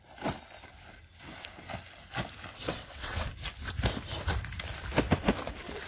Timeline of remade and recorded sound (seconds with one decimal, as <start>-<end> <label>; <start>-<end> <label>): 0.0-2.5 recorded; 2.5-3.3 remade; 3.3-5.9 recorded